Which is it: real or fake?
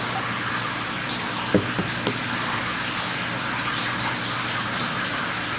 real